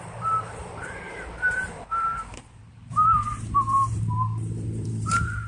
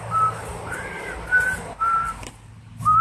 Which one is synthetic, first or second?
first